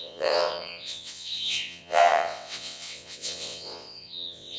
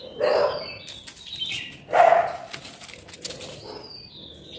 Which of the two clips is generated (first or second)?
first